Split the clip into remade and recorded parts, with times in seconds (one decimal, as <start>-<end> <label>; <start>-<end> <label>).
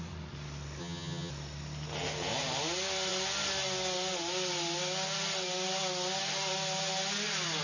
0.0-0.8 recorded; 0.8-1.3 remade; 1.3-7.6 recorded